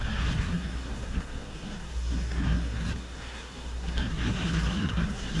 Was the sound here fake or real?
fake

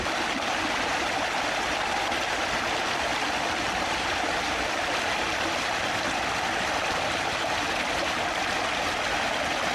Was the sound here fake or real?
real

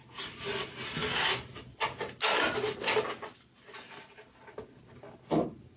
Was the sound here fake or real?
real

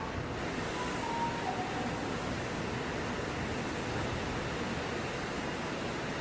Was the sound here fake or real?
real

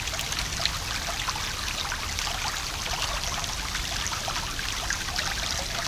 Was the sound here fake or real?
real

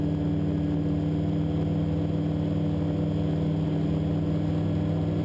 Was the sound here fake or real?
real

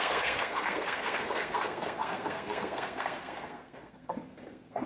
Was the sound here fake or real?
fake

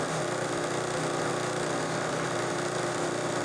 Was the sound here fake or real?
real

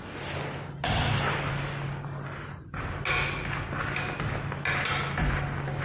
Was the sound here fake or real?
real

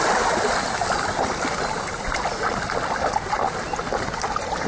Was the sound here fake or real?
real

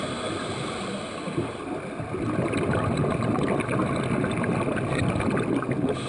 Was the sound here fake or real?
real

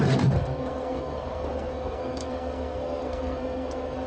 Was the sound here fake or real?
fake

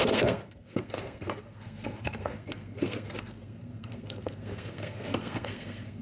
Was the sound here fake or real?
fake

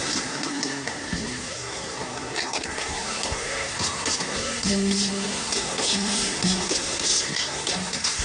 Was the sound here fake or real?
fake